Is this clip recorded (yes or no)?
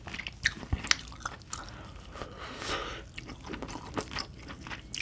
yes